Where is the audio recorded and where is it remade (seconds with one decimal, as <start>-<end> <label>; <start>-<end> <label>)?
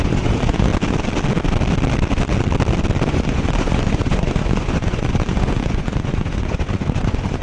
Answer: 0.0-0.7 remade; 0.7-3.1 recorded; 3.1-7.4 remade